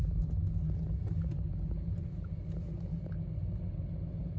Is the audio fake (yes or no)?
no